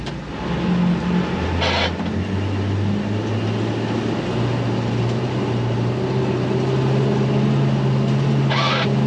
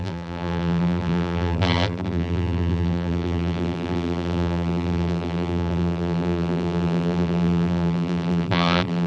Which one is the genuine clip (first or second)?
first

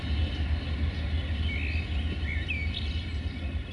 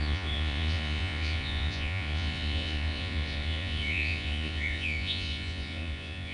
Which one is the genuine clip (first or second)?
first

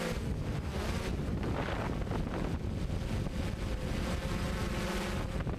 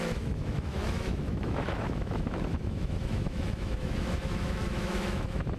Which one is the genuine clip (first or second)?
first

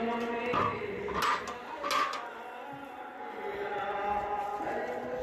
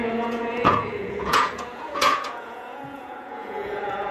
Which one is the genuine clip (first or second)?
first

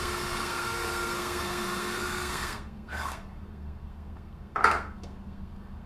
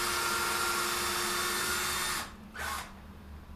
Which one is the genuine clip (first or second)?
second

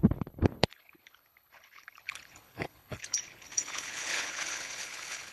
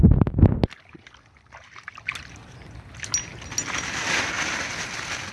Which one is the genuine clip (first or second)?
second